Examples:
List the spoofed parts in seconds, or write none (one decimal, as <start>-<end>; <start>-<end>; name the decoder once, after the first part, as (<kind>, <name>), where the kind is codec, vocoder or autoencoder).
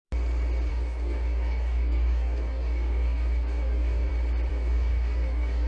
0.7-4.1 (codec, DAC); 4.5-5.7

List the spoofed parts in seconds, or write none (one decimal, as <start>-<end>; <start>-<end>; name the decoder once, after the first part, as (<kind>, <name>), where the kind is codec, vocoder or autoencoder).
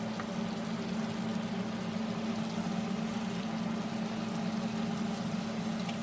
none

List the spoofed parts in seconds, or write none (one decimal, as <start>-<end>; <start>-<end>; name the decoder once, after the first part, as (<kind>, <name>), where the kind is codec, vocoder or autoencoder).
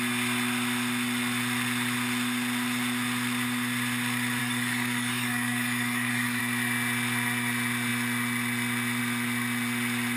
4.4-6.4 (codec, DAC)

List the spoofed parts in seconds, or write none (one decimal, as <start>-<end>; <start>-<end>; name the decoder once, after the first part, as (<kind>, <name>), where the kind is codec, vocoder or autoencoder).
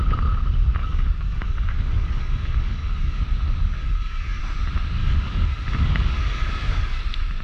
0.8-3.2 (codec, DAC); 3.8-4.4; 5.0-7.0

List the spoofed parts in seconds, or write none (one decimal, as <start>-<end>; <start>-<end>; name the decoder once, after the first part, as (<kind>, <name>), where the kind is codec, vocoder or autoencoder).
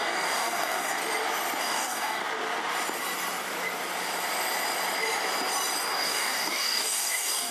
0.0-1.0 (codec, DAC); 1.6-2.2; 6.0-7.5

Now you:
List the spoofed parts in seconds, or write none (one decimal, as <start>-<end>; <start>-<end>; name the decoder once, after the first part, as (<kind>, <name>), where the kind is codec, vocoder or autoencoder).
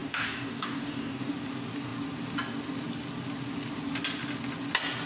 0.0-1.3 (codec, DAC)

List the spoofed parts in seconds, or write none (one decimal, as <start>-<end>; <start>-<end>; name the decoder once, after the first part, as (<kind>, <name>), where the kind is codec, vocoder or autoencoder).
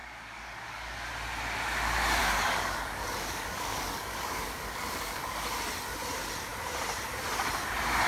0.0-1.1 (codec, DAC); 2.2-5.2